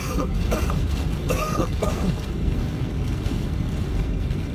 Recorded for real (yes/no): no